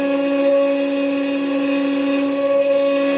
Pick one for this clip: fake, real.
real